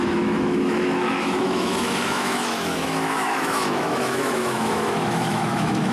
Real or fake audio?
fake